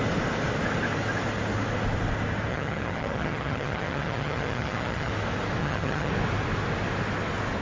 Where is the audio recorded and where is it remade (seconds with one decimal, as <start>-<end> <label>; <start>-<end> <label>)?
0.0-2.5 recorded; 2.5-5.1 remade; 5.1-5.6 recorded; 5.6-6.1 remade; 6.1-7.6 recorded